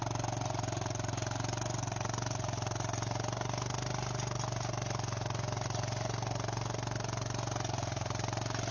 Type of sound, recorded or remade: recorded